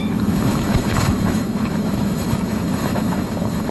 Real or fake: fake